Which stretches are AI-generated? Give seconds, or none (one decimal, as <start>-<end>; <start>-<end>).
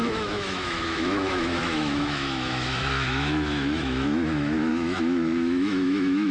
0.0-6.3